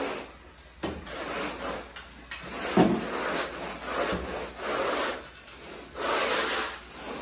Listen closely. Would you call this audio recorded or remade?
recorded